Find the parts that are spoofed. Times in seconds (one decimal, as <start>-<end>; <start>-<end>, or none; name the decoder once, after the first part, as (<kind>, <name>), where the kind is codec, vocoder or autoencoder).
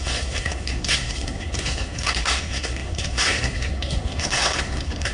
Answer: 0.0-5.1 (codec, SNAC)